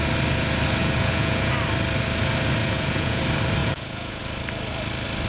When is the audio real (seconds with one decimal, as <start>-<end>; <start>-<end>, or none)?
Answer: 0.0-0.8; 1.5-2.6; 3.2-3.6; 4.2-5.3